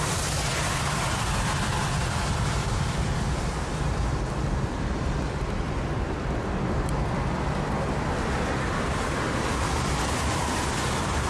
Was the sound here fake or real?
fake